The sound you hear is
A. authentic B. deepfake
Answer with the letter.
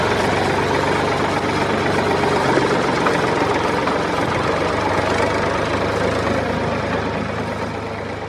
A